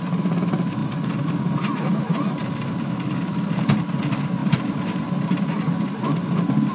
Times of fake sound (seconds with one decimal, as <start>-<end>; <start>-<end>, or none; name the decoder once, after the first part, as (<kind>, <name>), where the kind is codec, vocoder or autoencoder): 2.4-4.0 (vocoder, BigVGAN v2); 4.4-5.3

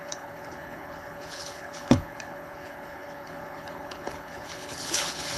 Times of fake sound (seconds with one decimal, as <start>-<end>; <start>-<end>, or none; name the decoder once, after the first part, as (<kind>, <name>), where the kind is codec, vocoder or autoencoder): 0.0-5.4 (codec, HILCodec)

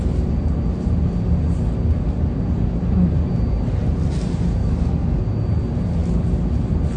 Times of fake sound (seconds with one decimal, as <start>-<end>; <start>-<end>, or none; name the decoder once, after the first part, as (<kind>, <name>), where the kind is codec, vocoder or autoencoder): 4.6-5.2 (codec, DAC)